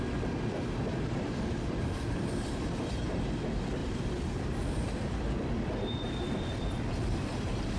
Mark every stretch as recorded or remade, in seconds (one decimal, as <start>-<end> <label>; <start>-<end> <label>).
0.0-3.8 recorded; 3.8-7.8 remade